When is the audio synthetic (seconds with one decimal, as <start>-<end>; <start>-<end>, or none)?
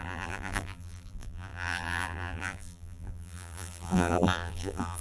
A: 0.0-5.0